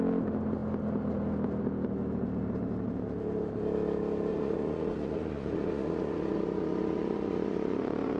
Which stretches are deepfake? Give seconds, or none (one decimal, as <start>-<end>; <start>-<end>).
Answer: 4.3-8.2